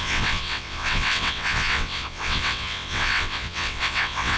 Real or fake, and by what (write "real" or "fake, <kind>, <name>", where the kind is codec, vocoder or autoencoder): fake, vocoder, WaveNeXt